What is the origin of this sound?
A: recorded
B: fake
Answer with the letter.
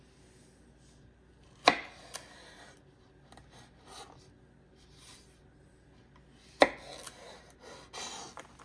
A